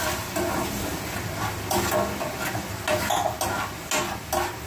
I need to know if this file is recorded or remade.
recorded